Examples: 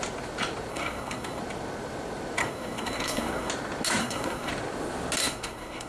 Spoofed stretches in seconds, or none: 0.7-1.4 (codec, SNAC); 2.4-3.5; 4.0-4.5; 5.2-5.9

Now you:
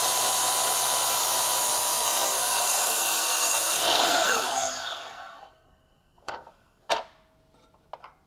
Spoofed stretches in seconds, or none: 1.9-6.9 (codec, SNAC)

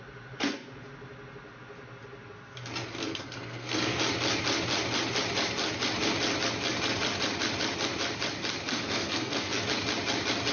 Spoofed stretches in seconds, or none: 3.0-4.0 (codec, SNAC); 8.7-9.6

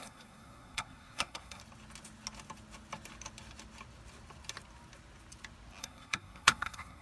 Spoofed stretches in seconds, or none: 0.0-1.6 (codec, SNAC); 5.8-7.0

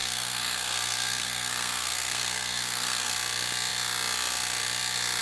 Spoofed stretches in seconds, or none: 0.0-3.1 (codec, SNAC)

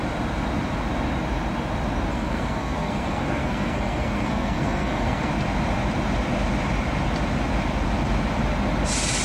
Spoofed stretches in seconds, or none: 2.1-5.3 (codec, SNAC)